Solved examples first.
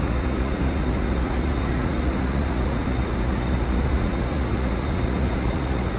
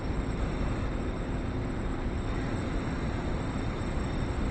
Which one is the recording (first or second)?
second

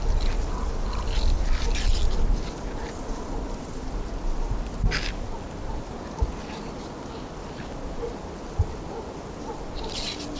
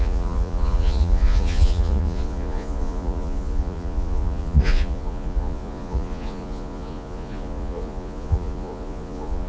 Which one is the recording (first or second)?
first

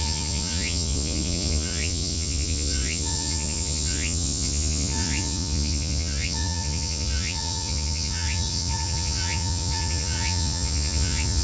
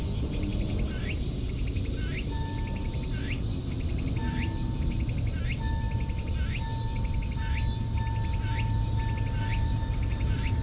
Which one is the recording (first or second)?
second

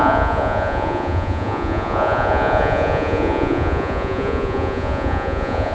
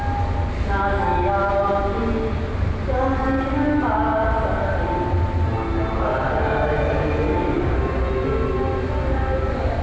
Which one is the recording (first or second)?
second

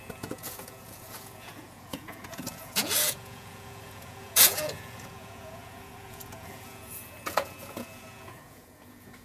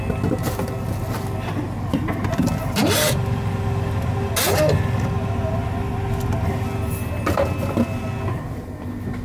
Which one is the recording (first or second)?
second